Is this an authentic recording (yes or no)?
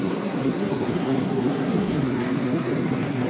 no